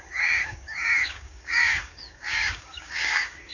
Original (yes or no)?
no